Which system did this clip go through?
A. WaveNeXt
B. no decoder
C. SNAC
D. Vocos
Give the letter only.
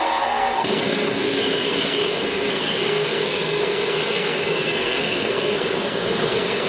C